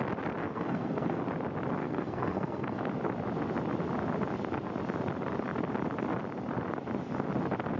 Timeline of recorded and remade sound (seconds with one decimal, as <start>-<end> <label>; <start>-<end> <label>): 0.0-0.4 recorded; 0.4-1.2 remade; 1.2-1.8 recorded; 1.8-2.8 remade; 2.8-7.8 recorded